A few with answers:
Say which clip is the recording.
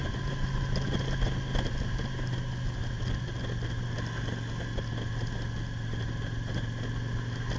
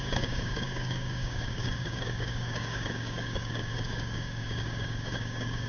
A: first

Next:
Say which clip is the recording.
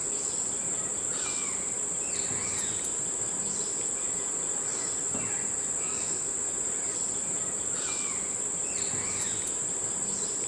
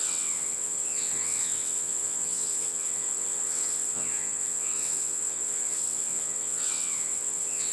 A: first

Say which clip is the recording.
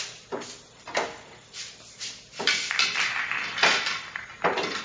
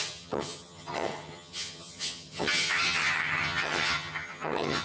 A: first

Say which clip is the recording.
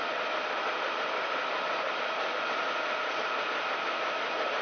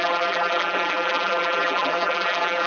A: first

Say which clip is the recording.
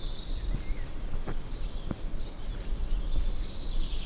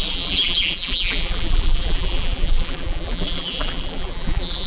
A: first